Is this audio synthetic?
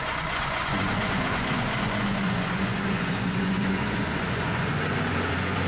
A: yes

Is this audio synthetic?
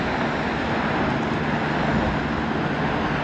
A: no